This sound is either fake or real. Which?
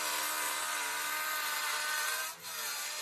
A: fake